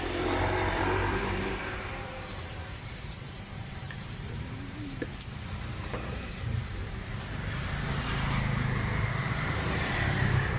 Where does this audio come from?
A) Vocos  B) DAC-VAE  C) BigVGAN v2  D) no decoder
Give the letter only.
C